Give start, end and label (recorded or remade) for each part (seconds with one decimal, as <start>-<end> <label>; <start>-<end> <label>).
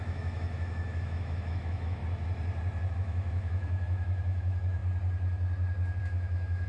0.0-2.0 remade; 2.0-2.9 recorded; 2.9-4.8 remade; 4.8-6.0 recorded; 6.0-6.7 remade